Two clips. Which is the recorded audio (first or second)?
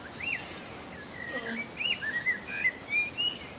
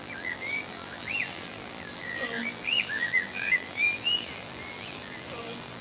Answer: first